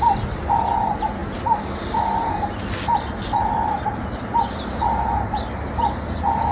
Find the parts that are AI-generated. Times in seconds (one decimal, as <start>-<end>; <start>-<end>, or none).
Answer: none